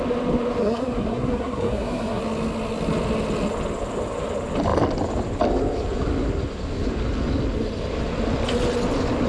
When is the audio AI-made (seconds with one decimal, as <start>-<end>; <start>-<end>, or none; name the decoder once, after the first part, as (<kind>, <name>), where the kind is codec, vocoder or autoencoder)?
0.6-2.2 (codec, SNAC)